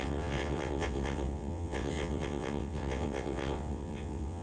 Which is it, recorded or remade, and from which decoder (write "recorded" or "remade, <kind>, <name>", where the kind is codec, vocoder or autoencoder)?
remade, vocoder, WaveNeXt